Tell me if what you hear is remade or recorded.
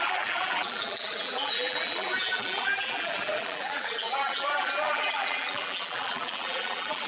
remade